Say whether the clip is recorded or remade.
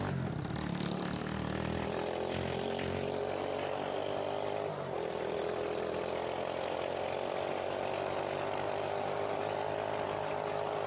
recorded